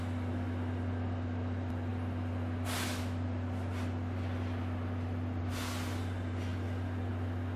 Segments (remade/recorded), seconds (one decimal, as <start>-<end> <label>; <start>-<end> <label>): 0.0-7.6 recorded